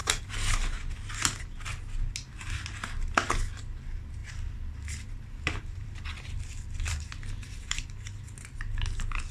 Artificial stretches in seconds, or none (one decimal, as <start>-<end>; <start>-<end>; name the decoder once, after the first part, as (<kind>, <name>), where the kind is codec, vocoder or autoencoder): 0.0-0.5 (vocoder, BigVGAN v2); 4.2-8.6